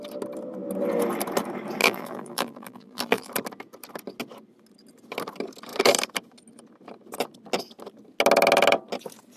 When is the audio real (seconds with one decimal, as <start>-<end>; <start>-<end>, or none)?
0.0-1.8; 3.3-9.4